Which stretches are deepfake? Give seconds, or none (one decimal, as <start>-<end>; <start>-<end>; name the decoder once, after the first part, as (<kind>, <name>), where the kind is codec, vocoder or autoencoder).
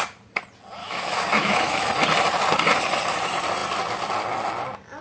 0.8-1.9 (autoencoder, DAC-VAE)